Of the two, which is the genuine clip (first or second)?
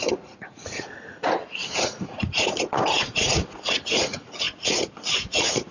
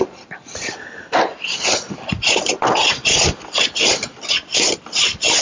second